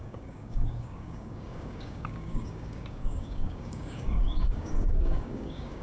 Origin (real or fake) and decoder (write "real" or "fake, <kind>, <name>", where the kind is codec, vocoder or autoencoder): fake, codec, DAC